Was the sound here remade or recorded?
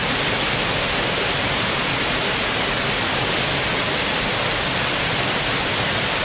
recorded